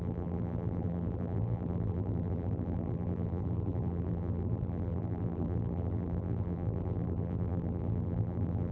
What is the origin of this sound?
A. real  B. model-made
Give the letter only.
B